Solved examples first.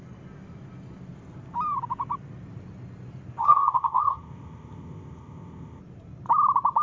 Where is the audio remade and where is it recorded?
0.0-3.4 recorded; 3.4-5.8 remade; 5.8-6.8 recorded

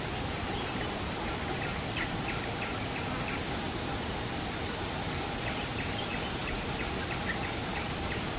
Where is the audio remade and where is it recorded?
0.0-8.4 recorded

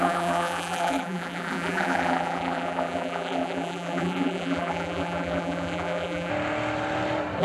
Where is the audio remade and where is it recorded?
0.0-6.3 remade; 6.3-7.4 recorded

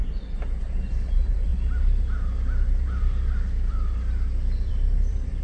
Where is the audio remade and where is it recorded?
0.0-0.7 recorded; 0.7-1.5 remade; 1.5-4.7 recorded; 4.7-5.4 remade

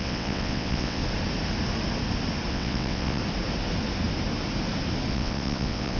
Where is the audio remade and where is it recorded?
0.0-1.0 remade; 1.0-2.5 recorded; 2.5-3.2 remade; 3.2-5.1 recorded; 5.1-6.0 remade

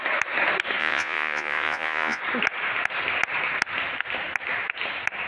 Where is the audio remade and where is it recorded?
0.0-0.8 recorded; 0.8-2.2 remade; 2.2-5.3 recorded